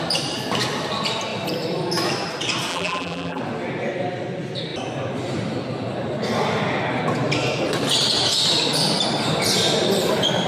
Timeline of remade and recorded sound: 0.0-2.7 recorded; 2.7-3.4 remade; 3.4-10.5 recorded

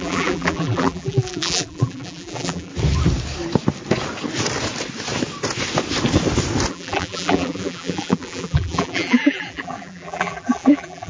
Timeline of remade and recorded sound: 0.0-2.7 remade; 2.7-6.7 recorded; 6.7-11.1 remade

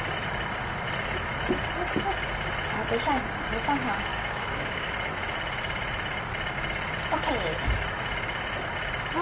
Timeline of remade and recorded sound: 0.0-4.1 recorded; 4.1-4.9 remade; 4.9-9.2 recorded

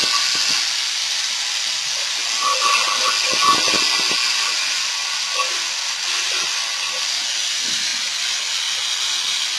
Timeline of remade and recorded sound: 0.0-9.6 recorded

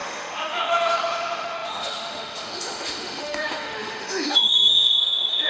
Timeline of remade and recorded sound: 0.0-5.5 remade

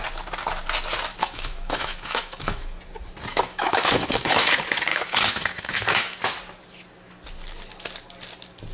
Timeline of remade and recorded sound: 0.0-1.2 recorded; 1.2-2.8 remade; 2.8-3.3 recorded; 3.3-4.5 remade; 4.5-4.9 recorded; 4.9-6.2 remade; 6.2-8.7 recorded

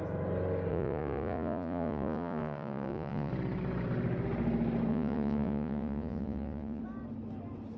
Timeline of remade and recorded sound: 0.0-0.7 recorded; 0.7-3.3 remade; 3.3-4.9 recorded; 4.9-6.8 remade; 6.8-7.8 recorded